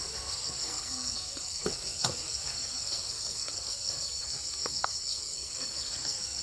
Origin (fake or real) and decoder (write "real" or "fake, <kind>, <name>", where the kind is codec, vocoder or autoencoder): fake, codec, SNAC